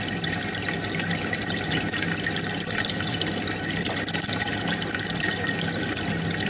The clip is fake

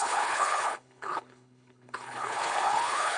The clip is fake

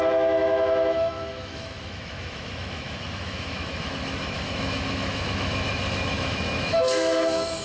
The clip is fake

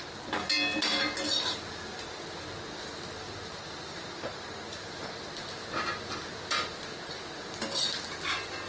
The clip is real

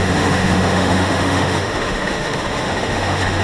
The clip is fake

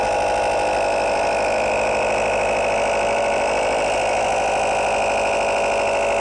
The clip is real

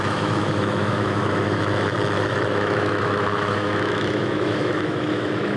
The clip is fake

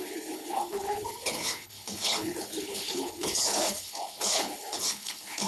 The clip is fake